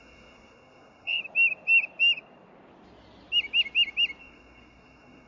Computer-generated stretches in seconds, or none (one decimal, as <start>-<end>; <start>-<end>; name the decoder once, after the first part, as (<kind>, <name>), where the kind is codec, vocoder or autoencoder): 0.0-1.2 (codec, SNAC); 4.2-5.3